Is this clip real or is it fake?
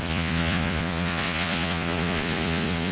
fake